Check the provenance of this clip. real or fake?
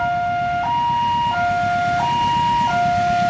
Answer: real